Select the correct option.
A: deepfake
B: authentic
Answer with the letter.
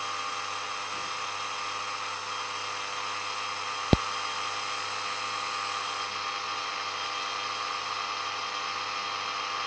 B